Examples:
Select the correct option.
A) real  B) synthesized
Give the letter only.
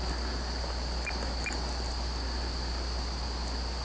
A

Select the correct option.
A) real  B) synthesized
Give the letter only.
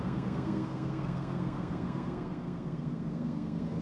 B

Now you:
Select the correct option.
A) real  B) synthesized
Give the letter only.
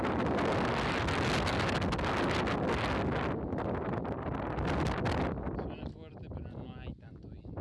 A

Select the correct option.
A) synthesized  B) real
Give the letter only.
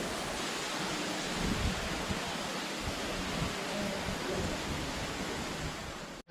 B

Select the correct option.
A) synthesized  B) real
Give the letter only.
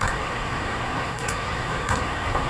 A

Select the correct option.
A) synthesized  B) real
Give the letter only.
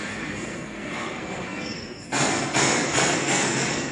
A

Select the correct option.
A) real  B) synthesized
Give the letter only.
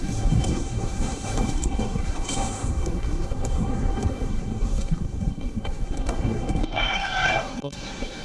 B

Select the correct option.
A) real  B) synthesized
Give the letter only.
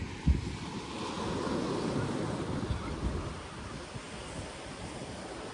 A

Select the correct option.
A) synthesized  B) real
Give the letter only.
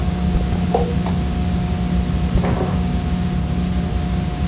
B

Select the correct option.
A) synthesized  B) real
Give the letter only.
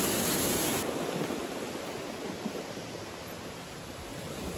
B